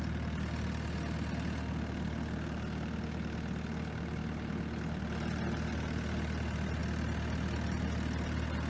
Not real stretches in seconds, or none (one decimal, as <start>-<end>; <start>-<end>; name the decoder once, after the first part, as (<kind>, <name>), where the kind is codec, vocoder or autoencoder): none